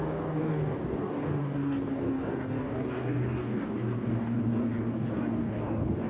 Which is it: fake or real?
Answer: fake